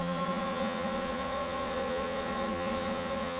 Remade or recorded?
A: remade